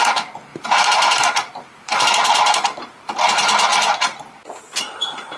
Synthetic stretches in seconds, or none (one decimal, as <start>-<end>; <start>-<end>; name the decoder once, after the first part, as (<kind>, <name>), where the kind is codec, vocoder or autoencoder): 0.5-3.0 (vocoder, BigVGAN v2)